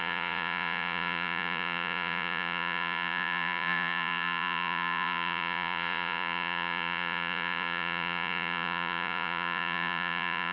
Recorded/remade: remade